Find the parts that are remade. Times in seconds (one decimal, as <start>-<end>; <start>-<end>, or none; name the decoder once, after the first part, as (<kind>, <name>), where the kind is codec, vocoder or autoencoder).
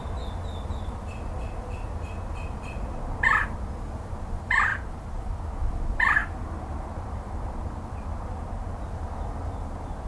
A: 4.7-5.7 (vocoder, BigVGAN v2); 6.2-8.8